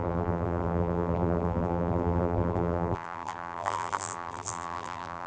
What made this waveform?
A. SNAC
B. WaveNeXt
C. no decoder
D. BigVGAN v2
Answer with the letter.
D